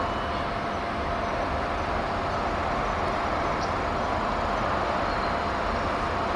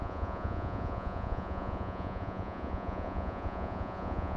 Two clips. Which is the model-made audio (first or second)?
second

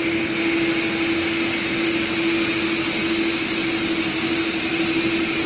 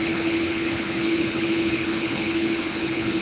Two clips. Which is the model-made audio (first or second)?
second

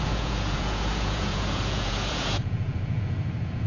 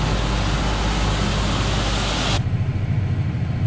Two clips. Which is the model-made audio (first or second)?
first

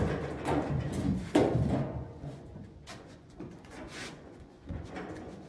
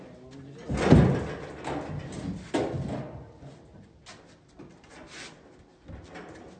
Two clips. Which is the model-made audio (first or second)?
first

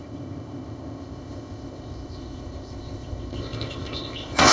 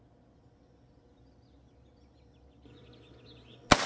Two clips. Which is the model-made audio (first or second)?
first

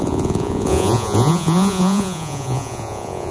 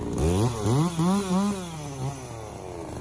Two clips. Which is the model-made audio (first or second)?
first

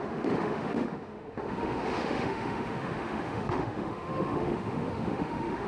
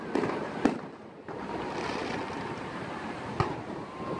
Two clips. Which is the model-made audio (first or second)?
first